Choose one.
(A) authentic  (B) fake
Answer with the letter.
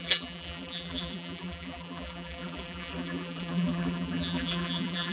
B